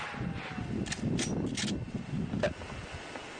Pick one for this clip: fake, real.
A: real